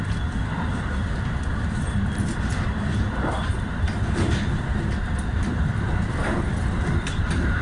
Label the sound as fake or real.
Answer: fake